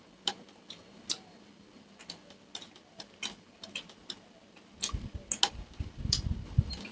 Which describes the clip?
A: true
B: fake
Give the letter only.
A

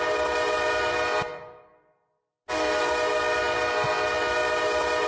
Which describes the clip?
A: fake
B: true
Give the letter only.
B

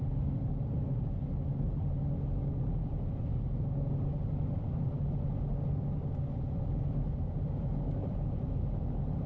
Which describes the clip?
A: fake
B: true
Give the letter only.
B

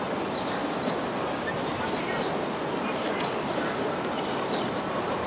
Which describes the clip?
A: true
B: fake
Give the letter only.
A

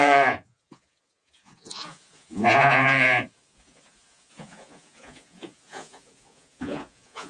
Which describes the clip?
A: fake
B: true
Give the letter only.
A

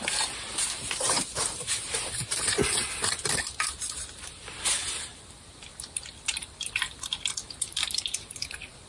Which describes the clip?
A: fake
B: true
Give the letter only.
A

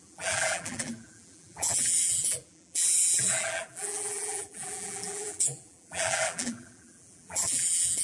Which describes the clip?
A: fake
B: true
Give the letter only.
A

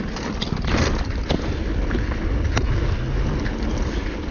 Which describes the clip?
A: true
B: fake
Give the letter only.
A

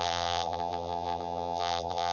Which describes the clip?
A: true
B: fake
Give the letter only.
B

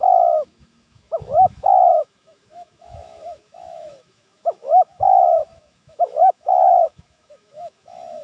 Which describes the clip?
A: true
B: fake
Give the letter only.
B